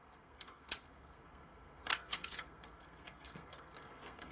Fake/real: fake